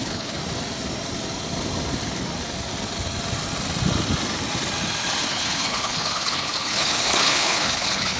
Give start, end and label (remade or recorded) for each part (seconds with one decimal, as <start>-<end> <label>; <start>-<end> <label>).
0.0-0.4 remade; 0.4-5.3 recorded; 5.3-8.2 remade